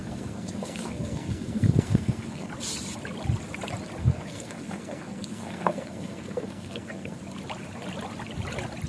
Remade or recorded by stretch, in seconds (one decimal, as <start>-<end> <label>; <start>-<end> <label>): 0.0-2.5 remade; 2.5-4.0 recorded; 4.0-7.2 remade; 7.2-8.9 recorded